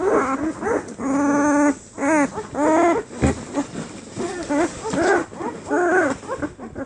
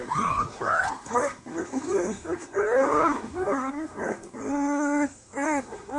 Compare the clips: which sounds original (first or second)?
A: first